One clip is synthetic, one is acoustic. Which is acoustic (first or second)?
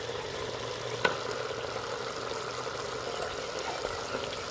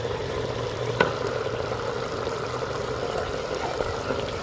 first